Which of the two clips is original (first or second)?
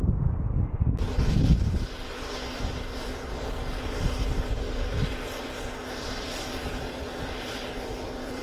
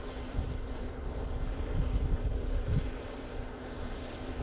first